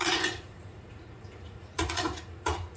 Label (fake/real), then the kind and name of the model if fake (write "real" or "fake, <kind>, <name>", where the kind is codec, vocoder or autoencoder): fake, vocoder, Vocos